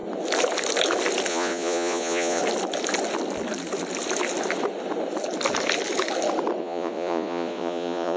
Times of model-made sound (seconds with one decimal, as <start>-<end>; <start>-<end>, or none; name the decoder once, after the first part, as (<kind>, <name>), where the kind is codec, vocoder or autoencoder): 1.3-2.4 (vocoder, Vocos); 6.6-8.2